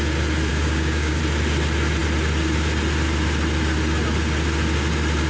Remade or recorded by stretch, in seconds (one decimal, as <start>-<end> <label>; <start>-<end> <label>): 0.0-0.5 recorded; 0.5-1.2 remade; 1.2-5.3 recorded